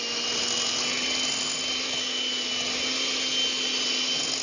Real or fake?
real